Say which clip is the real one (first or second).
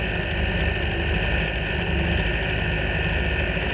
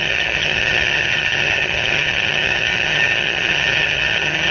first